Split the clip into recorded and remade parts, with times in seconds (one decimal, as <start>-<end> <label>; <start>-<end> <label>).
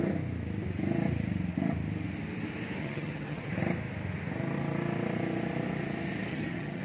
0.0-2.8 recorded; 2.8-3.5 remade; 3.5-6.3 recorded; 6.3-6.8 remade